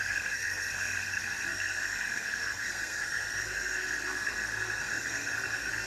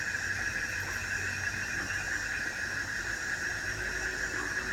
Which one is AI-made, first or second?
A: first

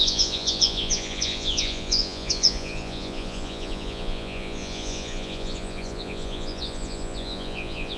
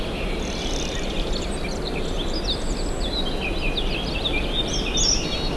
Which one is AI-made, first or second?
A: first